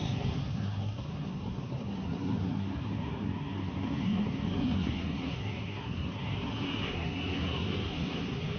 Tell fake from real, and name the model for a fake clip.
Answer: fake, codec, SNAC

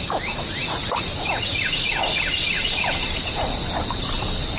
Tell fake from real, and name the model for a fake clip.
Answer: real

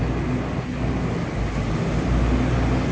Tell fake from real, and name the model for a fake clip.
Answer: real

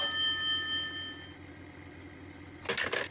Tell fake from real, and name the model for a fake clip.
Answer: real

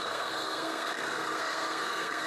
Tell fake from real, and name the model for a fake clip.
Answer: fake, codec, SNAC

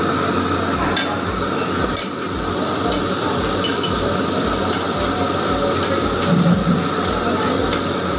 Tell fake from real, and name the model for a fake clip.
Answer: real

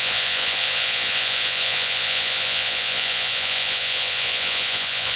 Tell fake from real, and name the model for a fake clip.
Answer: fake, vocoder, Vocos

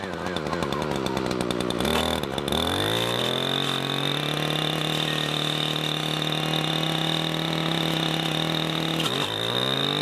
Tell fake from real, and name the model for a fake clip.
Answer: real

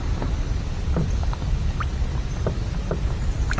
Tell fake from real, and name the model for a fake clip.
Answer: real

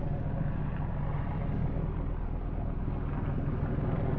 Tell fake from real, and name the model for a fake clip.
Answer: real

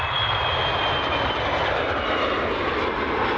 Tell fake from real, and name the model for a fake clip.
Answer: real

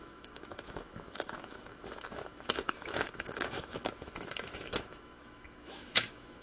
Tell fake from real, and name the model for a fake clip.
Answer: fake, autoencoder, DAC-VAE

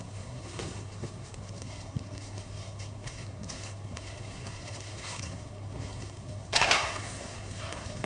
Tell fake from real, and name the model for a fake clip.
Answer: fake, codec, SNAC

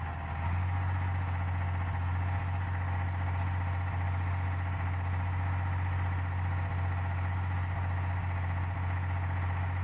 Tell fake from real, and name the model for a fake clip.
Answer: real